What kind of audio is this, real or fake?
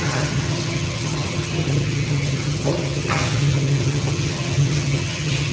fake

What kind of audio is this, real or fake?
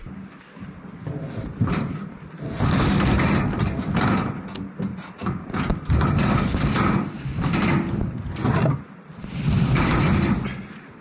real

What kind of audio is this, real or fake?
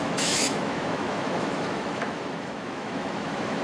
fake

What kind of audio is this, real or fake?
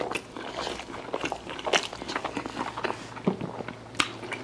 real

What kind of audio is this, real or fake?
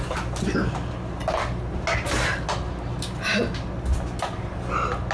real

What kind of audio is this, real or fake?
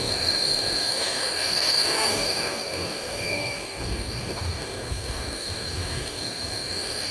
fake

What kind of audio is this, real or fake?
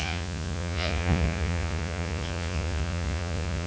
fake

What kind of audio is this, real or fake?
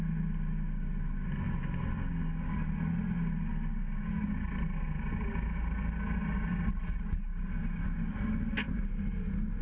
real